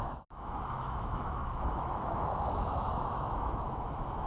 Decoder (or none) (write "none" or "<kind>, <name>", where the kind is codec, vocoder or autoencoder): autoencoder, DAC-VAE